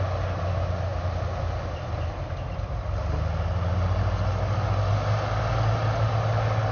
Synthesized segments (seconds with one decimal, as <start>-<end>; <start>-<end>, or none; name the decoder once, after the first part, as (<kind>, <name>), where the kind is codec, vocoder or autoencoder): none